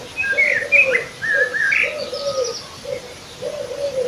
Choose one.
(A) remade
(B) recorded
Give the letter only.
B